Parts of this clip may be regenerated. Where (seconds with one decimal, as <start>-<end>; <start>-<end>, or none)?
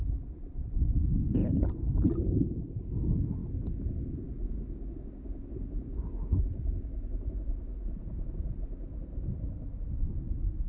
1.4-2.8